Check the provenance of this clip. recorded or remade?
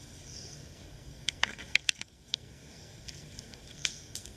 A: remade